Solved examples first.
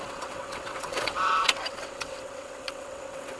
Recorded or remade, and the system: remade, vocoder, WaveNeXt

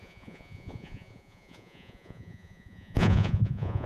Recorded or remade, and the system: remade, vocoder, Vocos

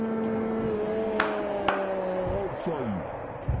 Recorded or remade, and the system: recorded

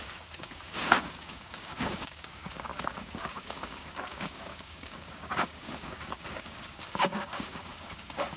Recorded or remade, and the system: remade, codec, DAC